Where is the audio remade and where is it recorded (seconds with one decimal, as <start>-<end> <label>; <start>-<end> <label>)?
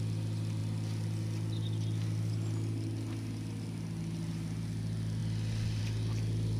0.0-6.6 recorded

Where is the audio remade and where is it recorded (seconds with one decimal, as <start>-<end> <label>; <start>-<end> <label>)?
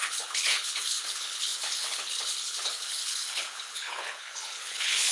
0.0-5.1 remade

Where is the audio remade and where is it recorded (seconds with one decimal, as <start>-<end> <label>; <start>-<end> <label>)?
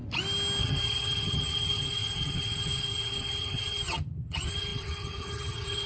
0.0-0.6 recorded; 0.6-5.9 remade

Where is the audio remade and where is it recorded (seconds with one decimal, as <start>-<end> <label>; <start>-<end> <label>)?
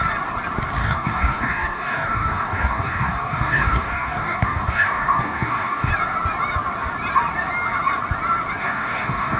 0.0-0.8 recorded; 0.8-5.9 remade; 5.9-8.6 recorded; 8.6-9.4 remade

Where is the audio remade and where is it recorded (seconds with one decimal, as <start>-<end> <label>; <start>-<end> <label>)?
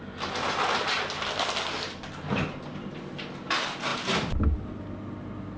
0.0-5.6 recorded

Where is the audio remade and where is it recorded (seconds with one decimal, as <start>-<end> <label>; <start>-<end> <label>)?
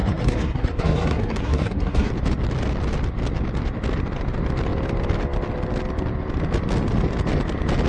0.0-2.1 remade; 2.1-7.9 recorded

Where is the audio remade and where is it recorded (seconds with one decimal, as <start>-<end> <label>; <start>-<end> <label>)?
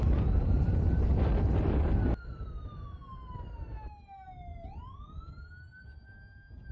0.0-1.1 remade; 1.1-2.3 recorded; 2.3-4.5 remade; 4.5-5.4 recorded; 5.4-6.7 remade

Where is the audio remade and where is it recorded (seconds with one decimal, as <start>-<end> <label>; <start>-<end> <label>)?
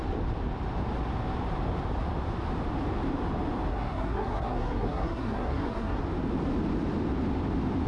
0.0-3.7 recorded; 3.7-6.0 remade; 6.0-7.9 recorded